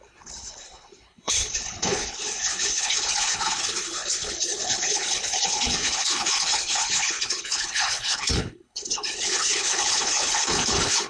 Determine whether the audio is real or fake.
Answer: fake